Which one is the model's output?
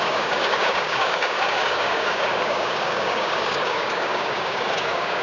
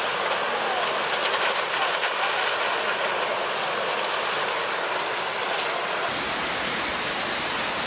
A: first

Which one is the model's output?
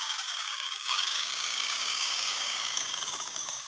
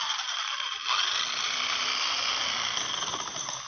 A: first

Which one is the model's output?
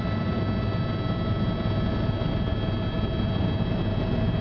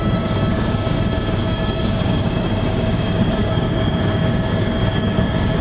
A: second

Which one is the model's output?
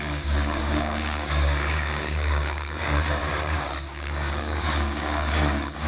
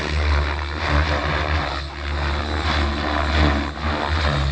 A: first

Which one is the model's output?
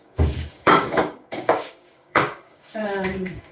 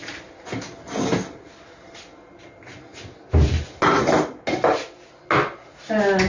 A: first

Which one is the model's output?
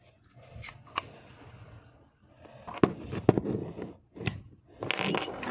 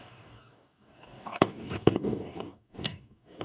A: second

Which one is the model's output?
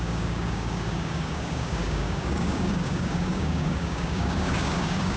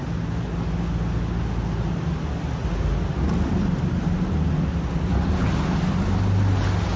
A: first